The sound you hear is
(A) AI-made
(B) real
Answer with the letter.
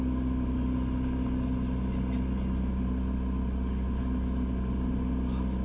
B